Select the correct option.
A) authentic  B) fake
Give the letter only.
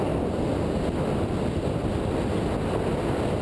A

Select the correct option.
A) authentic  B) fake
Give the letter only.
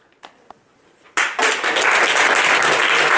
A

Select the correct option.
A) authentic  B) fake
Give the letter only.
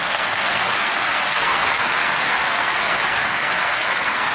B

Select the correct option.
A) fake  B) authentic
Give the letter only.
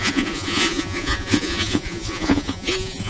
A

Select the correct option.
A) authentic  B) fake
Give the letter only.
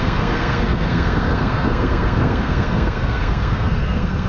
B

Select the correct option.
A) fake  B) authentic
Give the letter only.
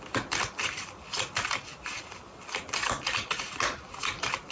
B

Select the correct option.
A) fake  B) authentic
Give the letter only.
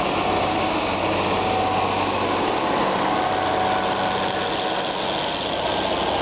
B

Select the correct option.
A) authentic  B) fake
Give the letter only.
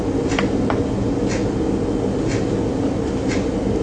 A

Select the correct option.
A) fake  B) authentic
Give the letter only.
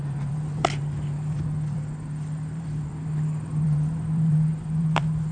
A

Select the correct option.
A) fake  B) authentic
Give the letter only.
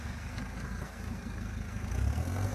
A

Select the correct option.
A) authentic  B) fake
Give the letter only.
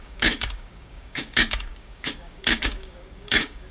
B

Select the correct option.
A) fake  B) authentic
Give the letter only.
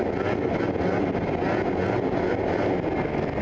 B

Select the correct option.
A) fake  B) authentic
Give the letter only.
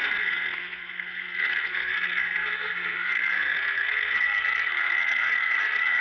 A